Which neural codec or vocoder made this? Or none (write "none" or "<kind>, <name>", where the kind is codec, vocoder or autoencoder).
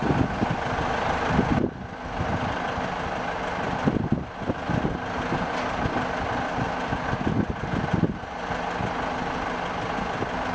none